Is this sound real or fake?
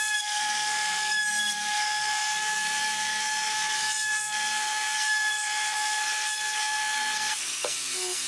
fake